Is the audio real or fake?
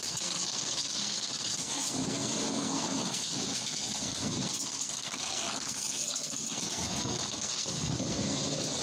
fake